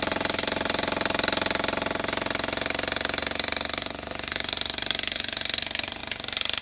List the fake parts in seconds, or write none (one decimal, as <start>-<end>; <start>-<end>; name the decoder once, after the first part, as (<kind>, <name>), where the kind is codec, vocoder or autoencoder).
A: none